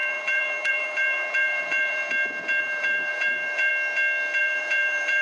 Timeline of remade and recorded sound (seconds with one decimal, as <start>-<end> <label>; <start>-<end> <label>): 0.0-2.0 remade; 2.0-2.6 recorded; 2.6-3.7 remade; 3.7-4.4 recorded; 4.4-5.2 remade